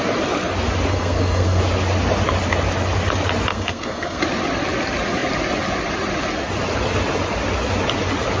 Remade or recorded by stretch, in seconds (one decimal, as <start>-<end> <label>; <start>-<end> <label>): 0.0-0.9 recorded; 0.9-1.6 remade; 1.6-3.5 recorded; 3.5-4.2 remade; 4.2-8.4 recorded